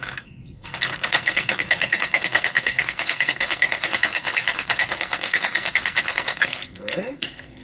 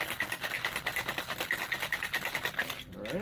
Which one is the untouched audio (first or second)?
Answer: second